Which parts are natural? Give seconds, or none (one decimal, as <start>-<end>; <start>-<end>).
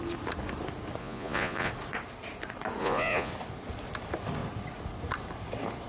0.0-1.0; 1.7-2.8; 3.3-5.9